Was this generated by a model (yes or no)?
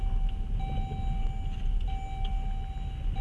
no